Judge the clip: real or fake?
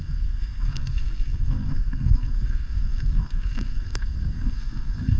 fake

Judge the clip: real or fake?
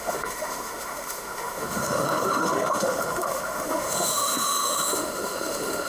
fake